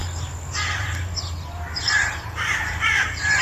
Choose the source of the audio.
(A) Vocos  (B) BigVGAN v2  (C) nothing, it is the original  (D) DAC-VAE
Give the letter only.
C